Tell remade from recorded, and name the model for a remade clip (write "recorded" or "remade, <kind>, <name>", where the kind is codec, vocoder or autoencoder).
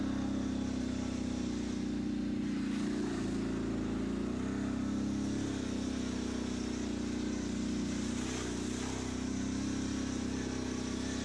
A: recorded